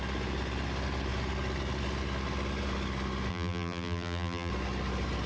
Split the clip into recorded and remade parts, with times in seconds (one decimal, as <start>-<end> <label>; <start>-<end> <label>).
0.0-3.3 recorded; 3.3-4.5 remade; 4.5-5.3 recorded